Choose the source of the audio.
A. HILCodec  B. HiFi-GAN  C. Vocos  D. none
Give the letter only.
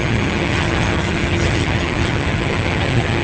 B